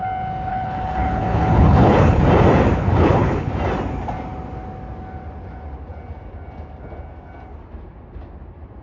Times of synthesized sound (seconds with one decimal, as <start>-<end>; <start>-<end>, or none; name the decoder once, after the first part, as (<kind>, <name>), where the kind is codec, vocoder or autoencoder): 0.5-2.2 (codec, HILCodec); 2.8-3.5